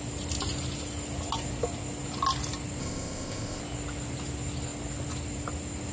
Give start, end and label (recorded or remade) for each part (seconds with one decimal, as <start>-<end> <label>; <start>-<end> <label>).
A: 0.0-2.8 recorded; 2.8-3.6 remade; 3.6-5.9 recorded